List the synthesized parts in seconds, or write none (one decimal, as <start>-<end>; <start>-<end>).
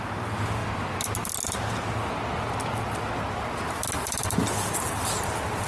none